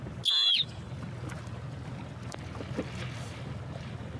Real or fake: real